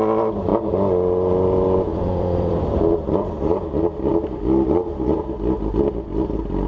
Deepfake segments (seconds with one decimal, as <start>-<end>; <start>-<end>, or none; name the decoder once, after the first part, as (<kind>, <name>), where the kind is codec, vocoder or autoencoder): 1.9-2.8 (vocoder, BigVGAN v2)